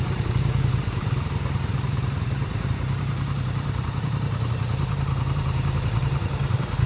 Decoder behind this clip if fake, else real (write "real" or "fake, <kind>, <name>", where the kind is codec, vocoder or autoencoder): fake, vocoder, BigVGAN v2